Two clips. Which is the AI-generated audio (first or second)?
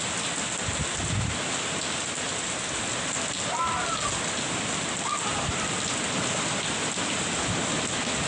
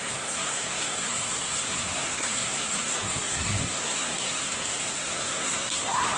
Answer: second